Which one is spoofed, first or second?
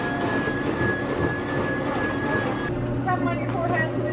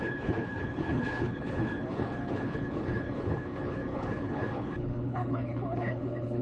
second